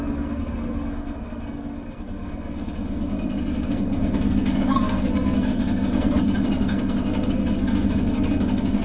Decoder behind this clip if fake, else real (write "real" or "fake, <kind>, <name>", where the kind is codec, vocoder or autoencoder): fake, codec, SNAC